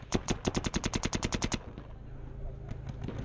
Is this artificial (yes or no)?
no